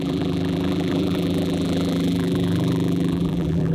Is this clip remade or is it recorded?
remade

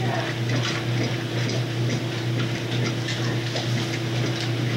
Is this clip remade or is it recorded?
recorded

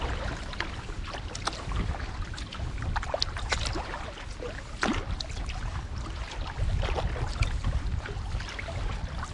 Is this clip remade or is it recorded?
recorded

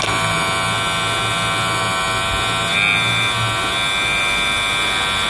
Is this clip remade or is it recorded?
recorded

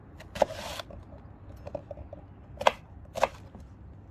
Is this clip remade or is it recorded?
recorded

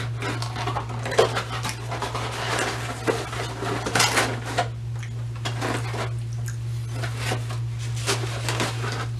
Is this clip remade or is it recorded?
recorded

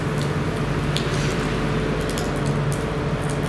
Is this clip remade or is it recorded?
recorded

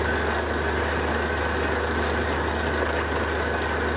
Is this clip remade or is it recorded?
recorded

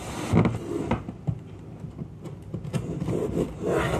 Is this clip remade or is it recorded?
recorded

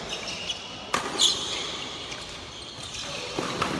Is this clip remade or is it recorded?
recorded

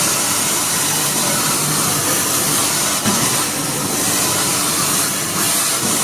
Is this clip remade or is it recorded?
recorded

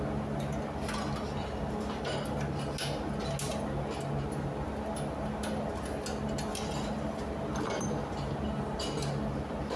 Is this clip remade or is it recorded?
recorded